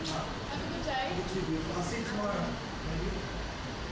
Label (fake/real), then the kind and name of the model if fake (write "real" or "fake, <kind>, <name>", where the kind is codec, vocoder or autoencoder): real